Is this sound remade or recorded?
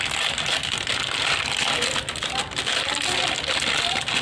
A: recorded